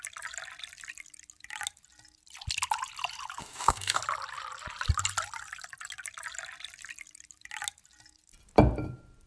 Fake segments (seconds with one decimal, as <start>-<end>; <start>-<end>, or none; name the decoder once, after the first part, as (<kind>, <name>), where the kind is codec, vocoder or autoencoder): 3.4-4.0 (codec, DAC)